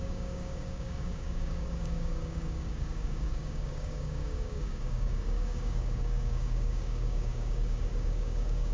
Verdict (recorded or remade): remade